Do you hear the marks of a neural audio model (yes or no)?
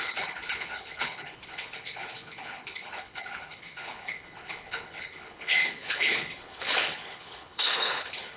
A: yes